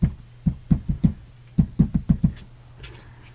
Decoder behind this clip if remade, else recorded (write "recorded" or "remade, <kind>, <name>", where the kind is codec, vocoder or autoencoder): recorded